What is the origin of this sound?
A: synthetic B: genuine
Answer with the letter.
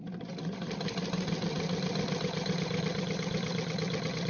B